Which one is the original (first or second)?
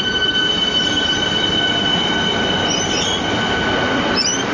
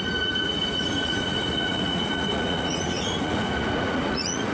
first